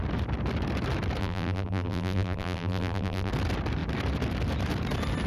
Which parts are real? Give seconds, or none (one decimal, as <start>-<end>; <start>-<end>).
0.0-1.2; 3.3-5.3